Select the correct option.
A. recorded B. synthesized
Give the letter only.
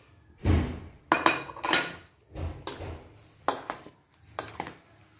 A